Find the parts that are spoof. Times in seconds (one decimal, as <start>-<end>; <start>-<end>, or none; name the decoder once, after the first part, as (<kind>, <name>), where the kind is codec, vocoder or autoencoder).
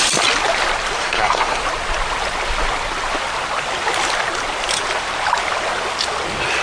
1.0-1.6 (codec, SNAC)